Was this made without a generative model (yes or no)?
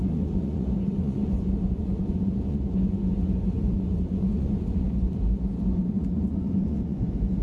no